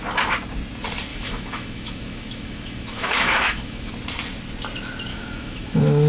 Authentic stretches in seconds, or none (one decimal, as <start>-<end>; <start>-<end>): 0.0-1.1; 3.9-5.1